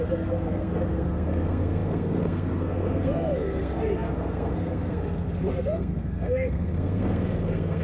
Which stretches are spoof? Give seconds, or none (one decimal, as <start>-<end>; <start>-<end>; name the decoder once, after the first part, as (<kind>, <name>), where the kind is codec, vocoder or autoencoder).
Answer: 0.0-7.8 (codec, SNAC)